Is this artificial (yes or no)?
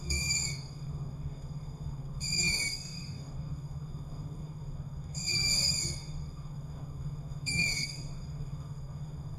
yes